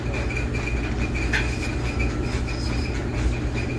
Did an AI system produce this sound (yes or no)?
no